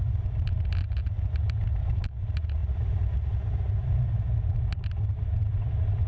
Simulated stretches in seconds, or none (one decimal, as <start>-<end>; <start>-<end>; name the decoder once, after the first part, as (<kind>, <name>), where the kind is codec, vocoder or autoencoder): none